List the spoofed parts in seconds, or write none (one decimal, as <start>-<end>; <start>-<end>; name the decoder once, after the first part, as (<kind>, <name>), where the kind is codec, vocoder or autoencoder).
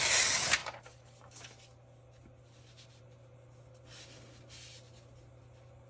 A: none